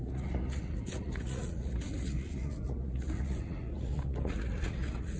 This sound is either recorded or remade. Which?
remade